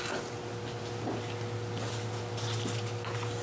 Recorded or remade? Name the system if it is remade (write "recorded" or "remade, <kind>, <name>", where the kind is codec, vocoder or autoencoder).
recorded